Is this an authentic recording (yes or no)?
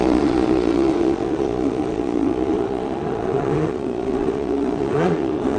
no